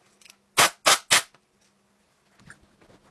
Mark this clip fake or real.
real